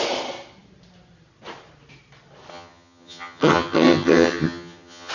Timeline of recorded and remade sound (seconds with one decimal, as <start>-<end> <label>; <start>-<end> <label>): 0.0-2.5 recorded; 2.5-5.1 remade